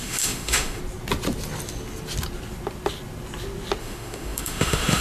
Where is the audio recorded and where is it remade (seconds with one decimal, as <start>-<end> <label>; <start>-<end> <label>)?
0.0-0.8 remade; 0.8-3.8 recorded; 3.8-5.0 remade

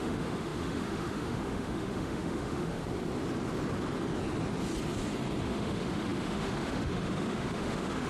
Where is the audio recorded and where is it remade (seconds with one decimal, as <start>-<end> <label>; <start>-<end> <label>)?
0.0-2.8 remade; 2.8-5.4 recorded; 5.4-8.1 remade

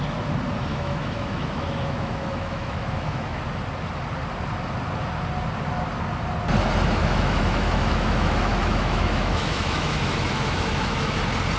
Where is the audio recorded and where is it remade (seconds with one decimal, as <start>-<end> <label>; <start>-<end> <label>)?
0.0-0.7 recorded; 0.7-3.4 remade; 3.4-7.0 recorded; 7.0-11.2 remade; 11.2-11.6 recorded

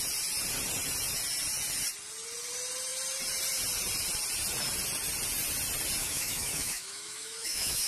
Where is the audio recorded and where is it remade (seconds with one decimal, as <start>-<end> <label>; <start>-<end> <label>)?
0.0-6.0 recorded; 6.0-7.9 remade

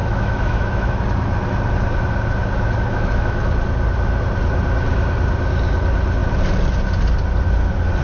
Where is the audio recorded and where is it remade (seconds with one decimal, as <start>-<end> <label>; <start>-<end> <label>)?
0.0-0.9 remade; 0.9-2.9 recorded; 2.9-3.5 remade; 3.5-8.0 recorded